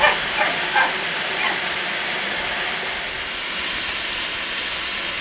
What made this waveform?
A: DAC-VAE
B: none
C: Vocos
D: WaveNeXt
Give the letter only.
B